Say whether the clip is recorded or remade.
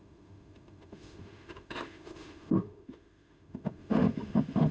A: remade